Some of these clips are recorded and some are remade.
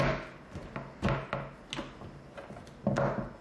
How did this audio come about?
recorded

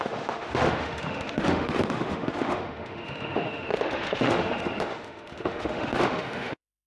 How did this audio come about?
remade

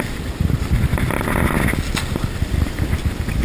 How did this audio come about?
recorded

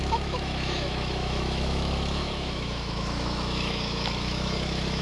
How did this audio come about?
remade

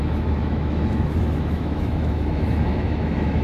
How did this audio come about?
remade